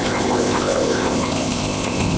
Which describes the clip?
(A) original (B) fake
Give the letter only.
B